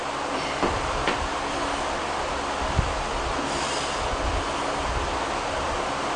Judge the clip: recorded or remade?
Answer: recorded